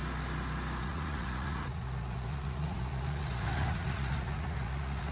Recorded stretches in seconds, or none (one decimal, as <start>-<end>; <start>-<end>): 0.0-0.8

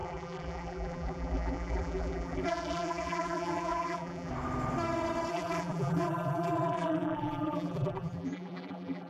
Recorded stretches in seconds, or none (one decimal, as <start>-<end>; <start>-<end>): 4.3-5.3